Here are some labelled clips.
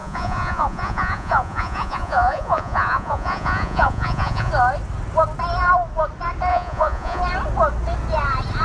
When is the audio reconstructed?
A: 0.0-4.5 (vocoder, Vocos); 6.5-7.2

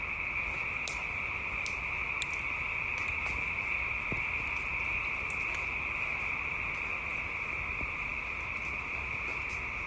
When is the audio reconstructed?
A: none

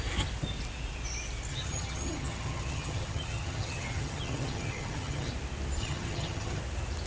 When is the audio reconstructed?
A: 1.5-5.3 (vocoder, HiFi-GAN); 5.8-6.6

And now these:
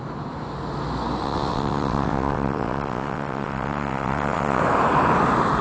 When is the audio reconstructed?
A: 1.2-4.6 (vocoder, WaveNeXt)

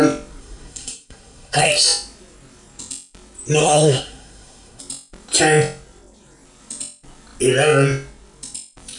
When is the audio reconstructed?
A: 0.4-1.7 (codec, SNAC); 3.6-4.8

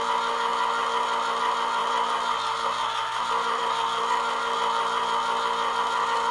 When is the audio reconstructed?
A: none